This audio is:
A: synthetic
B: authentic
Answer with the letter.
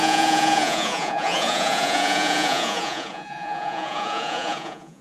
A